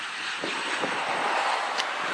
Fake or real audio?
real